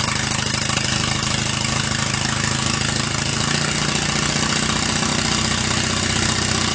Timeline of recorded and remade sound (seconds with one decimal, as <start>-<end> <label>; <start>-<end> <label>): 0.0-6.7 recorded